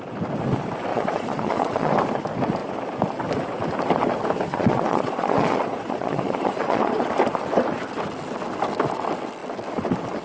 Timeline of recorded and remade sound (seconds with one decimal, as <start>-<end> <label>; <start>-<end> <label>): 0.0-0.9 recorded; 0.9-1.9 remade; 1.9-4.5 recorded; 4.5-7.1 remade; 7.1-10.2 recorded